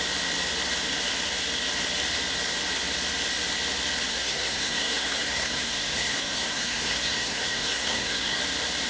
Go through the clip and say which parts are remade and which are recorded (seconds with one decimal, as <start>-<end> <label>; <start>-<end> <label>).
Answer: 0.0-4.1 recorded; 4.1-8.4 remade; 8.4-8.9 recorded